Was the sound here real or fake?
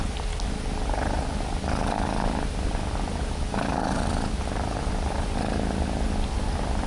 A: real